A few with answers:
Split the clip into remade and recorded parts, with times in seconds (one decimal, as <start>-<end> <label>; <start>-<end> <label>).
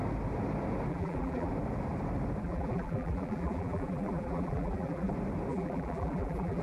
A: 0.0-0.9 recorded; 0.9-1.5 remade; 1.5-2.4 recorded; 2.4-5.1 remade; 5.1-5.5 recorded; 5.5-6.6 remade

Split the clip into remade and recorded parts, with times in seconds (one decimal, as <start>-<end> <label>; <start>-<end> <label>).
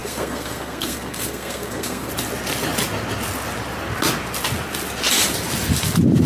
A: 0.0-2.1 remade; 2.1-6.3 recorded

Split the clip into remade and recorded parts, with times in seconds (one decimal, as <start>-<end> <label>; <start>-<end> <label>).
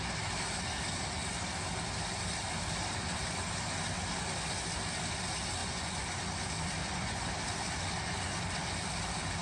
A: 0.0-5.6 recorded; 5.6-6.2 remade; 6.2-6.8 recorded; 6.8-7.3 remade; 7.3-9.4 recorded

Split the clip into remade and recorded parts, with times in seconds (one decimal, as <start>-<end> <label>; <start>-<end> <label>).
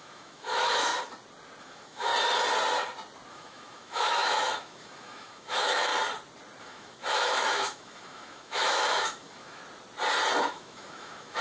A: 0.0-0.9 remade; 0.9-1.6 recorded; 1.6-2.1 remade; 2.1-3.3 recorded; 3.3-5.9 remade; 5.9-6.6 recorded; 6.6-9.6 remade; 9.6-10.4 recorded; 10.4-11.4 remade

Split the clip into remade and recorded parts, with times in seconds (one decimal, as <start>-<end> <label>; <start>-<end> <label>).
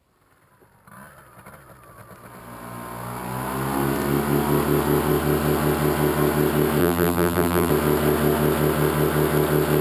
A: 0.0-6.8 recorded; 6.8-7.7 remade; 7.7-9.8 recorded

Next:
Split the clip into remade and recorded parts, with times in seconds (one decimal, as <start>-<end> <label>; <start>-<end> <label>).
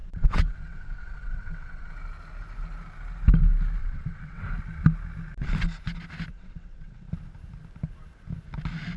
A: 0.0-1.9 remade; 1.9-3.8 recorded; 3.8-4.4 remade; 4.4-6.3 recorded; 6.3-7.1 remade; 7.1-9.0 recorded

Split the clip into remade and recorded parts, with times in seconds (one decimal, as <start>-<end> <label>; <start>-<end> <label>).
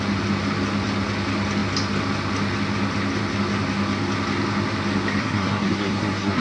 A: 0.0-5.2 recorded; 5.2-6.4 remade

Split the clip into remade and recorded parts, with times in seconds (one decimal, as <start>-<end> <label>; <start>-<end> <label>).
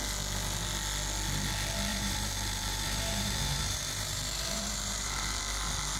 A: 0.0-1.9 recorded; 1.9-5.4 remade; 5.4-6.0 recorded